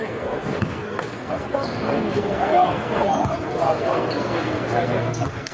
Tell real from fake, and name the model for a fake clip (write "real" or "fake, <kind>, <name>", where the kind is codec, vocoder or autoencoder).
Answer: fake, codec, SNAC